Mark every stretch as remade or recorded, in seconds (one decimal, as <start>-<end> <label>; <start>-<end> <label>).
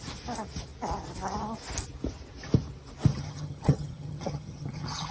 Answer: 0.0-3.1 recorded; 3.1-5.1 remade